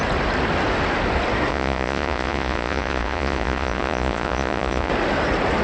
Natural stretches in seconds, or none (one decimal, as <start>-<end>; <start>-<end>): 0.0-1.5; 4.9-5.6